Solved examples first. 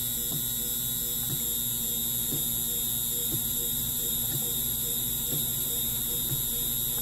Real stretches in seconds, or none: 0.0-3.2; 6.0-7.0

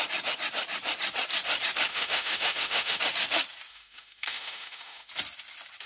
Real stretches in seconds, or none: 0.0-1.9; 3.0-3.7; 5.1-5.9

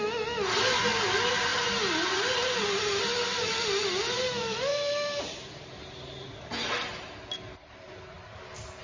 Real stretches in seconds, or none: 0.0-4.7; 5.2-8.8

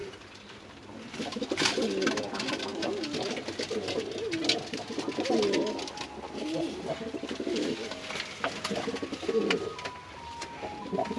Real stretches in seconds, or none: 0.0-11.2

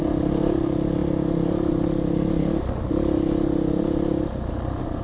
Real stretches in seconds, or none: 0.0-5.0

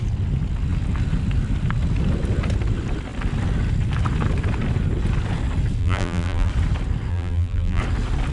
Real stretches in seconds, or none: 0.0-5.8; 6.5-7.1; 7.8-8.3

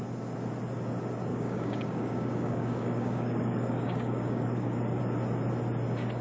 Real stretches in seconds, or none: 0.0-1.3; 5.0-6.2